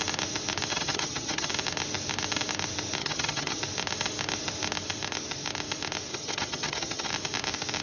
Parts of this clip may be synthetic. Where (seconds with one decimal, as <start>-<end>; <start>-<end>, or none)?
0.7-1.5; 3.0-3.6; 6.1-7.1